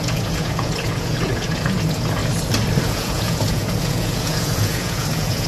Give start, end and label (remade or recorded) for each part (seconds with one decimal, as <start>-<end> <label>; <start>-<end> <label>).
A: 0.0-2.2 remade; 2.2-2.8 recorded; 2.8-5.5 remade